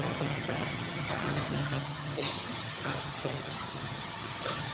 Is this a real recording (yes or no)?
no